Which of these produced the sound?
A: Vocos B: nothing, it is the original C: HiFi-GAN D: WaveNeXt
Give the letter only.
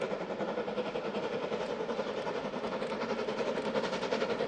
B